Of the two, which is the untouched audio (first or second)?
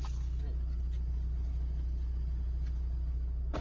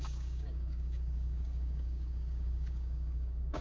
first